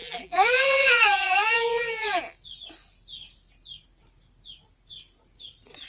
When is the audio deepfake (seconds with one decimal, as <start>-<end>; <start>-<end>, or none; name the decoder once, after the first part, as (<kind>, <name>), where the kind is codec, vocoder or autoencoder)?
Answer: 0.0-2.2 (vocoder, BigVGAN v2)

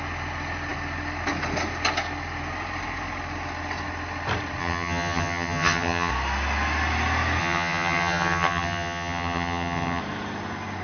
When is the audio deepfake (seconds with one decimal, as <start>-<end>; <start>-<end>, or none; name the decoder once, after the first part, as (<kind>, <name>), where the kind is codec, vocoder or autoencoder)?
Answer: 4.6-6.1 (vocoder, HiFi-GAN); 7.4-10.0